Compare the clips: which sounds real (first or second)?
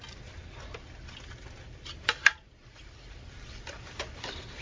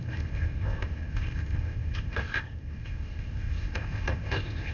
first